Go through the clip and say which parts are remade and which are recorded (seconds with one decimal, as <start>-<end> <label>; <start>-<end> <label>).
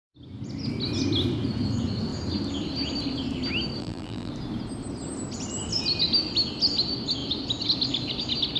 0.0-3.8 recorded; 3.8-4.3 remade; 4.3-8.6 recorded